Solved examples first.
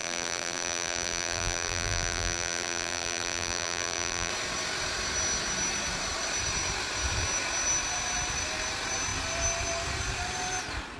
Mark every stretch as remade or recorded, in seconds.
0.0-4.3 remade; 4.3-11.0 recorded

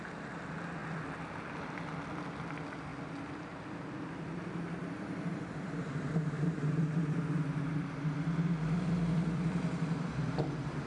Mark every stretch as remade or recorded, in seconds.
0.0-10.9 remade

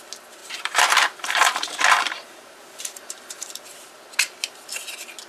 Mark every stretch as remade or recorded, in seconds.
0.0-0.4 recorded; 0.4-3.6 remade; 3.6-5.3 recorded